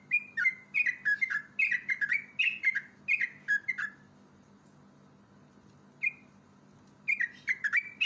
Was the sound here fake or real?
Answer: real